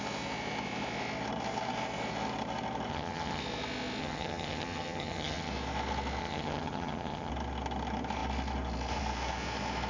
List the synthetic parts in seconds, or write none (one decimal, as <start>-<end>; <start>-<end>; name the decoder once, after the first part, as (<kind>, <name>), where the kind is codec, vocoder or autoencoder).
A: 2.9-3.4 (vocoder, HiFi-GAN); 4.0-5.5; 6.2-7.3